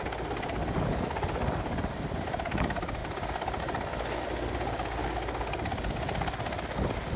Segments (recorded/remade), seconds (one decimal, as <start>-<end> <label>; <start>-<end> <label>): 0.0-7.2 recorded